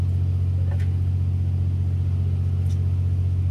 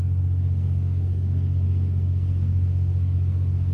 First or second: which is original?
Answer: first